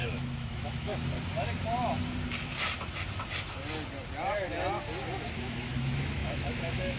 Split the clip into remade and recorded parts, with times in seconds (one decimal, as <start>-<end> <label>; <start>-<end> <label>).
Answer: 0.0-0.9 remade; 0.9-5.1 recorded; 5.1-7.0 remade